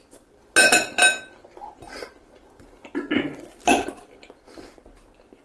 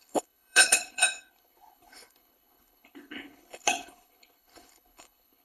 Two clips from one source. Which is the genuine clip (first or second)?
first